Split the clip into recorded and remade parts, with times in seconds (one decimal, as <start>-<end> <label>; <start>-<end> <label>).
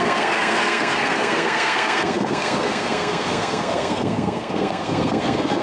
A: 0.0-5.6 remade